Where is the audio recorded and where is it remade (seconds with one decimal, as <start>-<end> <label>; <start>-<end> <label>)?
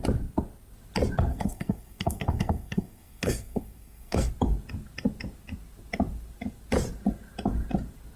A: 0.0-1.3 recorded; 1.3-4.3 remade; 4.3-8.2 recorded